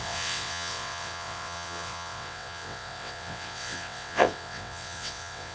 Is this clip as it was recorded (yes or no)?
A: no